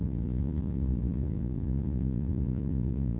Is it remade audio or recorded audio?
remade